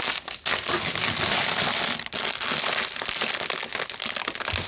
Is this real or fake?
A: real